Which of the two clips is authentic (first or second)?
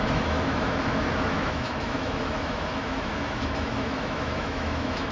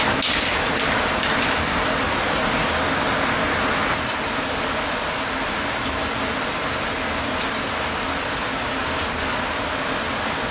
second